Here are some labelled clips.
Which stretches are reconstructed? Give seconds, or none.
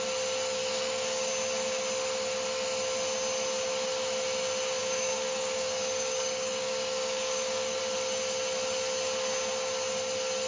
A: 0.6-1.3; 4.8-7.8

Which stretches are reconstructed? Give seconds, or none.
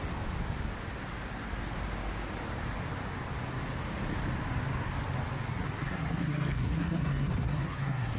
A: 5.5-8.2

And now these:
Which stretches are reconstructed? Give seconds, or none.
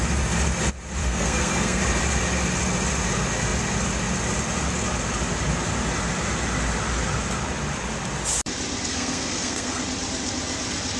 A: 1.0-1.8; 8.9-9.8